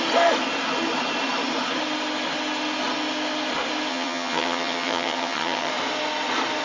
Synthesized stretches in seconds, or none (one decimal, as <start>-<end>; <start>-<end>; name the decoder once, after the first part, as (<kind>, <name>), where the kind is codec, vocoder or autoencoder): 3.9-5.7 (vocoder, HiFi-GAN)